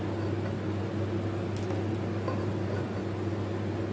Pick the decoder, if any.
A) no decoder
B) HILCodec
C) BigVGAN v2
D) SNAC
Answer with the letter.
A